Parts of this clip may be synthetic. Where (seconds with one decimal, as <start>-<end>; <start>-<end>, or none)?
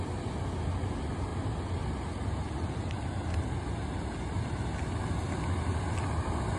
none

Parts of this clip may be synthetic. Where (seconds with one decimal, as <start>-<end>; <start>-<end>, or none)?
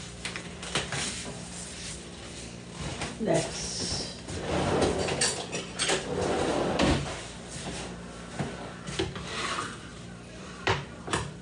2.9-3.9; 6.5-7.5; 9.9-11.4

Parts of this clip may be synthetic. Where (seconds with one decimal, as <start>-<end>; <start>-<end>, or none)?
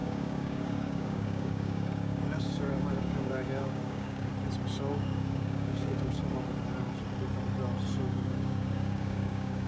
0.0-4.3; 4.8-6.2; 7.9-9.7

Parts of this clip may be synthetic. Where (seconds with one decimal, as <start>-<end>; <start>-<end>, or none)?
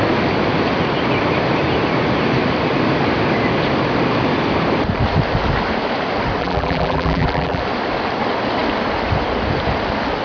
6.4-7.6